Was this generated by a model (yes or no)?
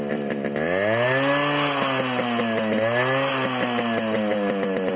no